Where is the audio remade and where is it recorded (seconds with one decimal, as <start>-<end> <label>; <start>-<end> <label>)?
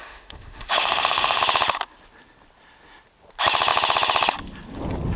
0.0-1.4 remade; 1.4-5.2 recorded